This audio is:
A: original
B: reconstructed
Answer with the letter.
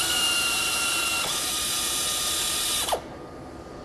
B